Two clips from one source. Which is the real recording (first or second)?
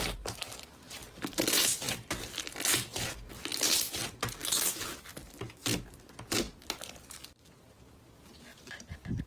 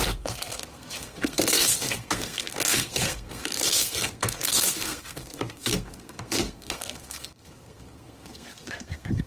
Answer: first